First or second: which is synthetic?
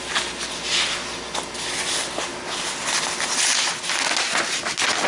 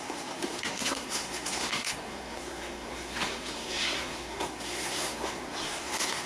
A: second